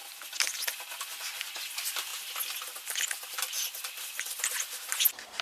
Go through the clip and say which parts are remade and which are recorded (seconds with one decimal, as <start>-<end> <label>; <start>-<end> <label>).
0.0-5.4 recorded